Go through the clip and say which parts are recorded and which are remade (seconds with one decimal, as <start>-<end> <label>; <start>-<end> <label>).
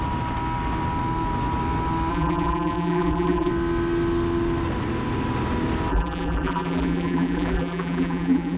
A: 0.0-2.1 recorded; 2.1-3.5 remade; 3.5-5.9 recorded; 5.9-8.6 remade